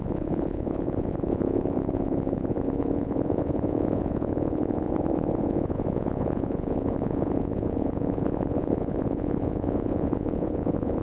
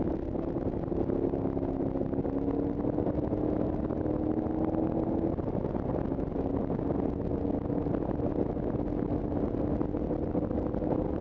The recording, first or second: second